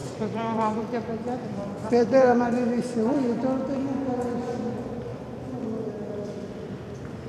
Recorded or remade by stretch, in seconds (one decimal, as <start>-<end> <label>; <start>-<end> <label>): 0.0-0.8 remade; 0.8-1.8 recorded; 1.8-3.4 remade; 3.4-5.1 recorded; 5.1-5.6 remade; 5.6-7.3 recorded